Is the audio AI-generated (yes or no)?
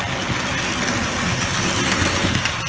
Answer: no